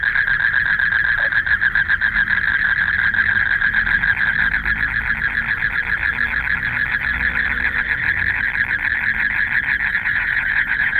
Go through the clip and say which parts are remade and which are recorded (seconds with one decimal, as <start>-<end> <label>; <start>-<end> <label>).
0.0-9.9 recorded; 9.9-11.0 remade